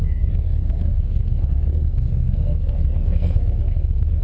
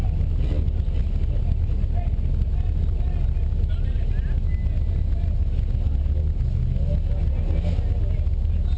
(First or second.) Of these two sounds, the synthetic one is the first